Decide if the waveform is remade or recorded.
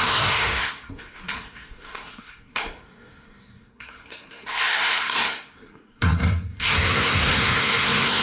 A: remade